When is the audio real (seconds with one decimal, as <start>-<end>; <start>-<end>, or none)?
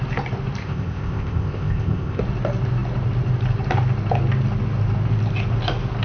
0.0-0.6; 2.2-6.0